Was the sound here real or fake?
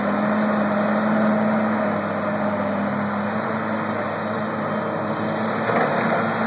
real